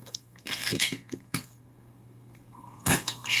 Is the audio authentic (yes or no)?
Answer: no